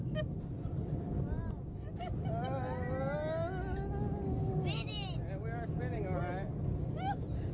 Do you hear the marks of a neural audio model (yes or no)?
no